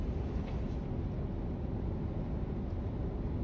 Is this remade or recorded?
recorded